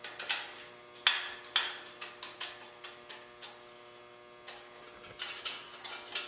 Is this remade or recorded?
recorded